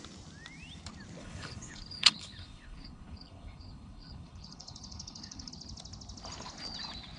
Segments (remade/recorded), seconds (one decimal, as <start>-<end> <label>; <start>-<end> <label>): 0.0-1.2 recorded; 1.2-5.5 remade; 5.5-7.2 recorded